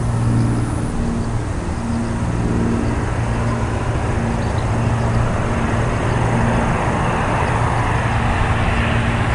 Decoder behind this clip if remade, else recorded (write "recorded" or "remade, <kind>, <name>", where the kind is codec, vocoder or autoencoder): recorded